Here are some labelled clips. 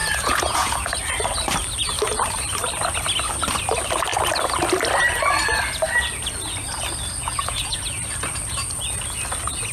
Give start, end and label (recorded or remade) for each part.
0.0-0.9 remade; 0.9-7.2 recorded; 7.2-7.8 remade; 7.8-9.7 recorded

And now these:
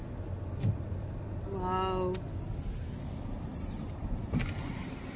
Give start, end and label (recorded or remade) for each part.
0.0-5.2 recorded

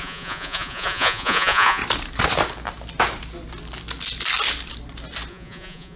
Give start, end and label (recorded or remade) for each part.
0.0-1.8 remade; 1.8-5.3 recorded; 5.3-6.0 remade

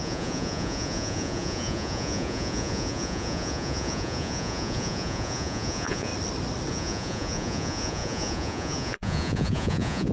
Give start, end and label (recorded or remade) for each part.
0.0-6.1 remade; 6.1-6.7 recorded; 6.7-10.1 remade

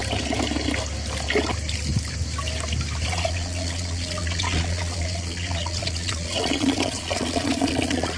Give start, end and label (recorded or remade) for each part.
0.0-3.1 recorded; 3.1-8.2 remade

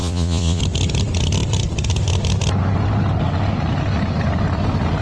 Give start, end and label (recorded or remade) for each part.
0.0-0.6 remade; 0.6-5.0 recorded